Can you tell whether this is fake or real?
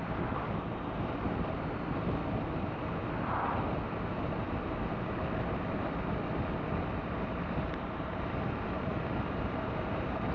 real